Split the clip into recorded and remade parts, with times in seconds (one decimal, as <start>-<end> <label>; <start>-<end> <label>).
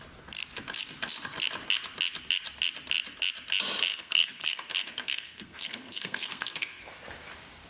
0.0-3.9 recorded; 3.9-6.9 remade; 6.9-7.7 recorded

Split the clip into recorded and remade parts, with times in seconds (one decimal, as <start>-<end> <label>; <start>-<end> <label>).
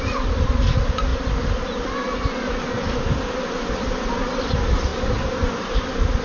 0.0-6.2 recorded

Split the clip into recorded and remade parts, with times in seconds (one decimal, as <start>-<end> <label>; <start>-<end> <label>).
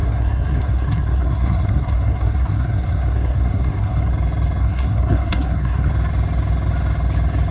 0.0-4.1 remade; 4.1-4.6 recorded; 4.6-5.9 remade; 5.9-7.5 recorded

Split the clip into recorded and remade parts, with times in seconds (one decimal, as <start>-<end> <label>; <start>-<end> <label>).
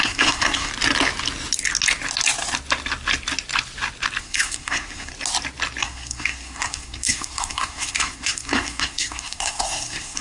0.0-0.7 remade; 0.7-4.2 recorded; 4.2-5.1 remade; 5.1-5.8 recorded; 5.8-10.2 remade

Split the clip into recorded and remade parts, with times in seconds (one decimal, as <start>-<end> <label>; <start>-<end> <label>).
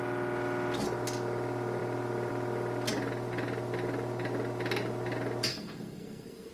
0.0-5.5 recorded; 5.5-6.5 remade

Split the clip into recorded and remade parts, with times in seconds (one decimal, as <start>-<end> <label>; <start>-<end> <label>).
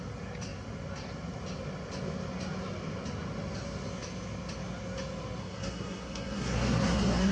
0.0-5.4 recorded; 5.4-7.3 remade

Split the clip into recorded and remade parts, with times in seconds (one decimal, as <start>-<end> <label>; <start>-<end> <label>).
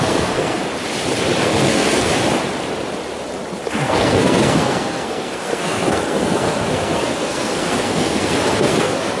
0.0-0.6 remade; 0.6-1.4 recorded; 1.4-2.1 remade; 2.1-3.7 recorded; 3.7-9.2 remade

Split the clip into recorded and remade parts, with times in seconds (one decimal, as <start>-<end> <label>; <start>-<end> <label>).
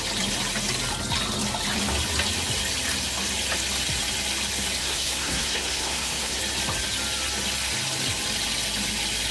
0.0-4.8 recorded; 4.8-6.4 remade; 6.4-9.3 recorded